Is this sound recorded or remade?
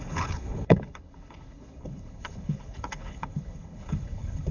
remade